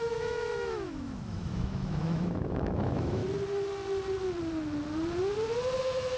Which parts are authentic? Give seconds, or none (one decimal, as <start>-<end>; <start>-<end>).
3.2-5.8